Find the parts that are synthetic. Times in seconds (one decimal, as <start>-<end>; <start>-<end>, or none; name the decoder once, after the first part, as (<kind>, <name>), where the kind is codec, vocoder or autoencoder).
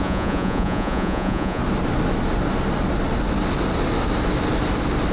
0.0-1.6 (vocoder, Vocos)